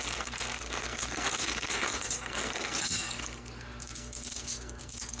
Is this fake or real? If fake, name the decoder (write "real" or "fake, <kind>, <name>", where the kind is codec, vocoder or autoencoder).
fake, codec, SNAC